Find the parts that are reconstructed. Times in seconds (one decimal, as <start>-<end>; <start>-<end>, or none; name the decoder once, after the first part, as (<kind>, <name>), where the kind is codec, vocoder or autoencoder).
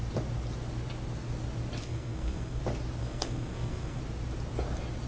1.8-2.6 (codec, SNAC); 3.0-4.0